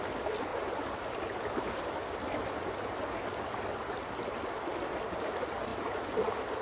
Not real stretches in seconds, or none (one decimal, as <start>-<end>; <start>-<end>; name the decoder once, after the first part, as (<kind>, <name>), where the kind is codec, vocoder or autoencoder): none